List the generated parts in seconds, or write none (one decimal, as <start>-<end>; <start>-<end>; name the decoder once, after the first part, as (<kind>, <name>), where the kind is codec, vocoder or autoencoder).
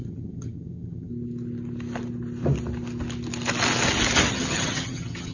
0.0-1.1 (vocoder, HiFi-GAN); 4.3-5.3